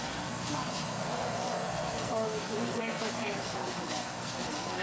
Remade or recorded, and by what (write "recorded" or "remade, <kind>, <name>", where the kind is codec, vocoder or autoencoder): remade, codec, SNAC